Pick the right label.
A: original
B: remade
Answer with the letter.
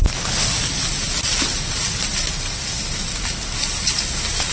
A